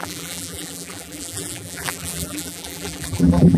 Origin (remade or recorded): remade